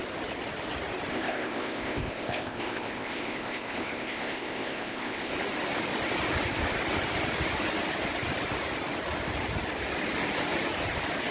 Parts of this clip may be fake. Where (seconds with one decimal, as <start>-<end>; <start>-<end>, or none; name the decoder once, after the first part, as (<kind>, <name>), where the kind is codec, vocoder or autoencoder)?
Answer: 1.1-5.3 (codec, ZipCodec)